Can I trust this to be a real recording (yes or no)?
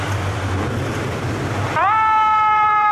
no